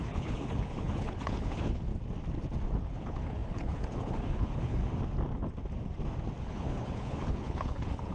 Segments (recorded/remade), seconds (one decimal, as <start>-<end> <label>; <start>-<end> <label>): 0.0-1.9 remade; 1.9-2.8 recorded; 2.8-4.8 remade; 4.8-6.4 recorded; 6.4-8.1 remade